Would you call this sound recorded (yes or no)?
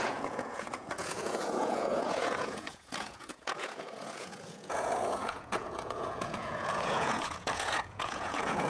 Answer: no